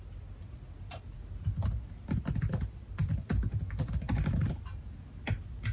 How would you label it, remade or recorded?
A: recorded